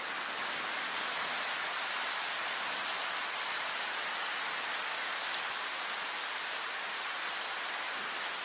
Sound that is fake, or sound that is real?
real